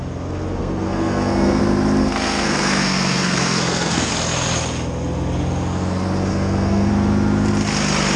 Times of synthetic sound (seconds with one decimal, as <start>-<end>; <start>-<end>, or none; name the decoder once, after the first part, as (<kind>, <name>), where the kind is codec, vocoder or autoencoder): 0.6-1.6 (codec, SNAC); 2.0-4.1; 6.3-6.9